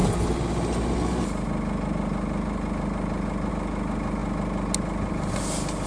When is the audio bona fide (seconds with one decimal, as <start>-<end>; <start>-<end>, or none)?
0.0-5.9